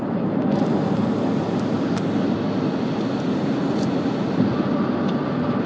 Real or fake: real